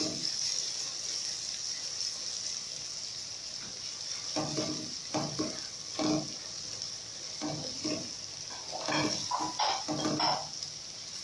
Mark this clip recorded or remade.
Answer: recorded